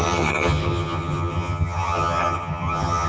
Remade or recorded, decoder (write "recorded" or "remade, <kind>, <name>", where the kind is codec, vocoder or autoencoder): remade, vocoder, HiFi-GAN